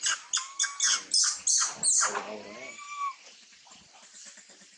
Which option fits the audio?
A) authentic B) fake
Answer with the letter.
A